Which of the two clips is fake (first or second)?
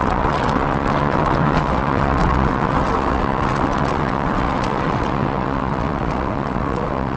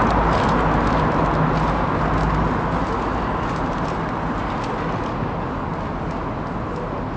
first